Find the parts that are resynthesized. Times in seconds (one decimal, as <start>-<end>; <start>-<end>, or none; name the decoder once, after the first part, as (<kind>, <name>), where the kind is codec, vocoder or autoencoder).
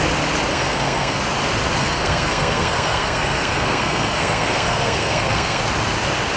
0.5-1.2 (codec, SNAC); 1.8-5.6